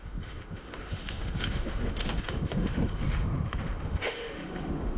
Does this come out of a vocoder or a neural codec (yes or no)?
yes